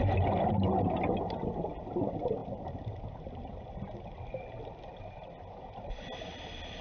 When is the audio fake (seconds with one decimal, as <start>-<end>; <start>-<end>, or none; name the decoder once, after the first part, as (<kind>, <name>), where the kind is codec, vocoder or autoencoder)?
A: none